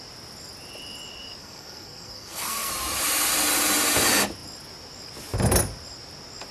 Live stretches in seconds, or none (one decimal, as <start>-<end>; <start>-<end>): 0.0-1.4; 2.7-6.5